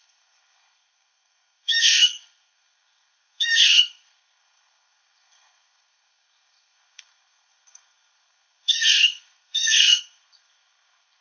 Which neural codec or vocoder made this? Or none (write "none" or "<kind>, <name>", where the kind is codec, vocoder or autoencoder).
codec, SNAC